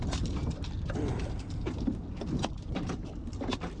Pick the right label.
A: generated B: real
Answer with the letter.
A